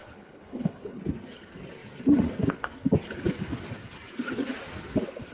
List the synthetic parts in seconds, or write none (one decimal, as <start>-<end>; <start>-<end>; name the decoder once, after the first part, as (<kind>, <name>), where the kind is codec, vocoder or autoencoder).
0.0-1.0 (codec, HILCodec)